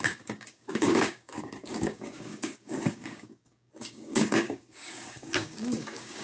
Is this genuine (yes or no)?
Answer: no